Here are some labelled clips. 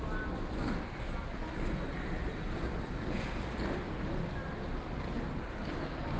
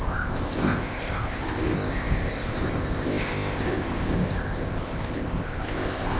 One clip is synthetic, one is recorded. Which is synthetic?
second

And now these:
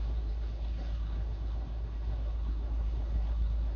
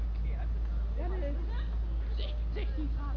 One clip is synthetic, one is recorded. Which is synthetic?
first